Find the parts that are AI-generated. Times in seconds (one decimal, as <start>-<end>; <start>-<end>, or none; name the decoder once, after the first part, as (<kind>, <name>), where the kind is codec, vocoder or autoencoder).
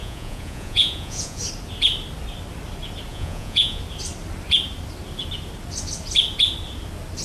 0.0-1.4 (vocoder, Vocos); 3.1-3.8